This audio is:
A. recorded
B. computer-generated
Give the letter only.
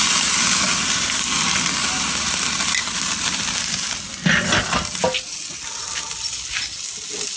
A